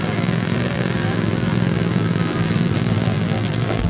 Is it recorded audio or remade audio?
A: remade